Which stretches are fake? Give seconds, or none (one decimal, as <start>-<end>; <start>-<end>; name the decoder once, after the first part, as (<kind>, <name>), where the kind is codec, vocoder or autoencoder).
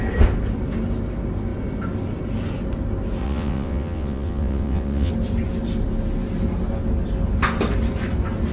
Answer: 3.2-5.1 (vocoder, WaveNeXt)